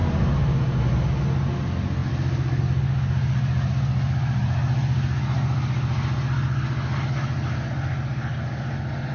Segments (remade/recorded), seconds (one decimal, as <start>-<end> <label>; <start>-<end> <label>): 0.0-9.1 recorded